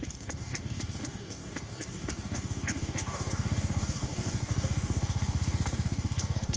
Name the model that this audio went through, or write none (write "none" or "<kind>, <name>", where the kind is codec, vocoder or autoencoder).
codec, DAC